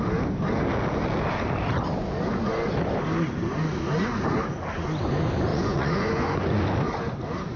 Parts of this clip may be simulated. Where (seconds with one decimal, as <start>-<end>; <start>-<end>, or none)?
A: 5.5-6.6